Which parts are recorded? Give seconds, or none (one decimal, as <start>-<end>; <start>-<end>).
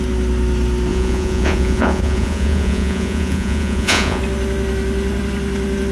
0.0-0.9; 4.2-5.9